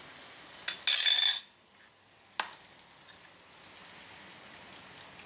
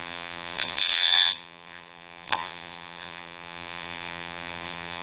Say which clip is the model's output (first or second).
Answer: second